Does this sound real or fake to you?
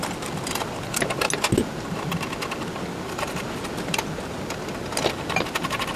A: real